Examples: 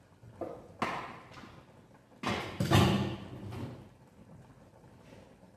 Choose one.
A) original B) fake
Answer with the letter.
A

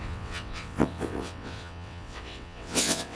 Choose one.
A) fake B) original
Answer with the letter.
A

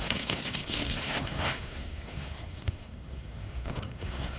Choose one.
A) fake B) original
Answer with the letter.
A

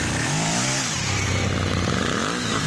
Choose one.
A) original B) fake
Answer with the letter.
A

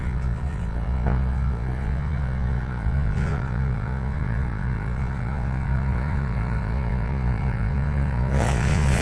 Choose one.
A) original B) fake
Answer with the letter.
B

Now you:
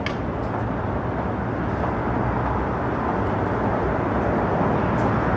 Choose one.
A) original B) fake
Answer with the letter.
A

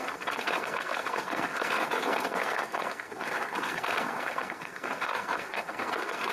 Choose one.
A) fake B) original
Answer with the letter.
A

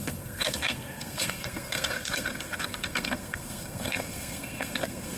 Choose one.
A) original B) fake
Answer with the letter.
B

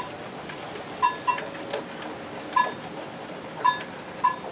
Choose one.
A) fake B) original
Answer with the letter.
B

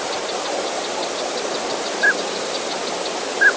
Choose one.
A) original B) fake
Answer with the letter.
A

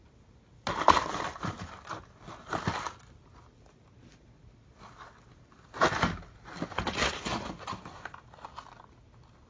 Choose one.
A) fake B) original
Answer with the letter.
B